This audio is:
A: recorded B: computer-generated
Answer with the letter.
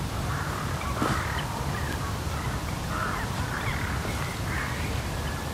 B